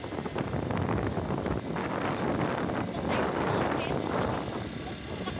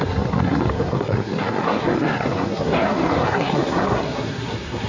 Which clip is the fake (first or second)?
second